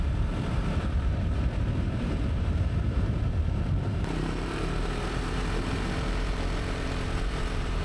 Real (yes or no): no